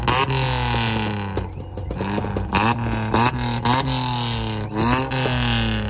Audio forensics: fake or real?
real